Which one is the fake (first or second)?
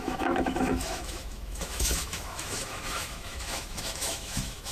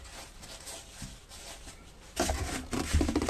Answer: first